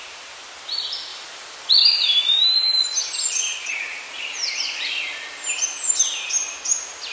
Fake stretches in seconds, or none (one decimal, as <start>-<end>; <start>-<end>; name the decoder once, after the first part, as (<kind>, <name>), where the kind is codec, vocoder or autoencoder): 1.1-2.4 (vocoder, BigVGAN v2); 3.0-6.0